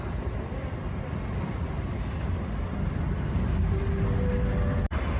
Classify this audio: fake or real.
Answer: real